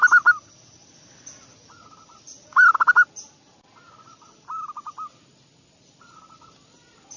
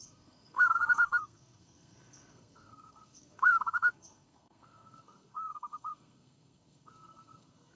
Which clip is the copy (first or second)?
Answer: second